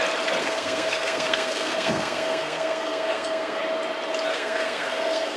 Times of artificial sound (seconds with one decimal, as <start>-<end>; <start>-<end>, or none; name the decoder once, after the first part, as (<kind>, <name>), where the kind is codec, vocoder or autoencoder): 0.4-3.6 (codec, SNAC); 4.3-5.4